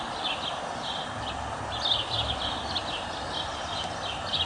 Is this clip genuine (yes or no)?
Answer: yes